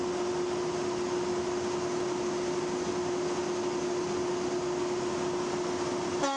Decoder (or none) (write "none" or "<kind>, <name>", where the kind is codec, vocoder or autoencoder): none